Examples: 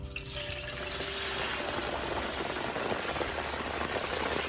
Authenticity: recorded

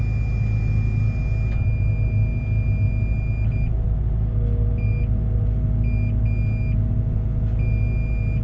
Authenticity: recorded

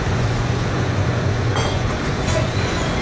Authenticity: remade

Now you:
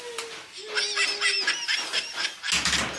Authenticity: recorded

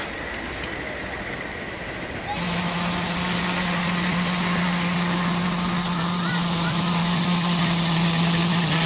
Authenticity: recorded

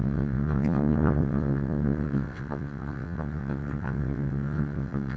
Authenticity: remade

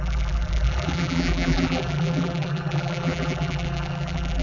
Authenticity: remade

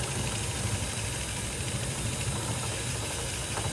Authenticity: recorded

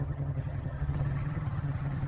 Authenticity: remade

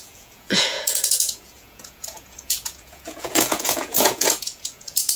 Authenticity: remade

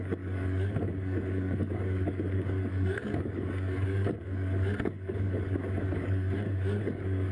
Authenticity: remade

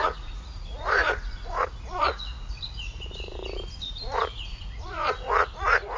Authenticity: remade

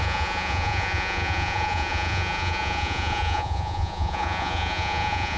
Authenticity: remade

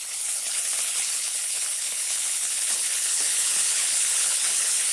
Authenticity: remade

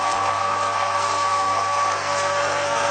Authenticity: remade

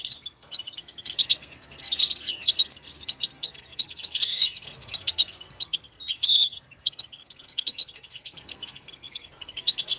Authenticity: remade